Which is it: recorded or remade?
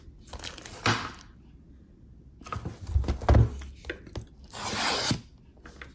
recorded